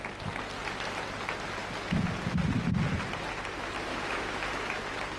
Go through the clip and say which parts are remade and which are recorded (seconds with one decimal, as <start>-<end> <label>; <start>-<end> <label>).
0.0-3.9 recorded; 3.9-4.7 remade; 4.7-5.2 recorded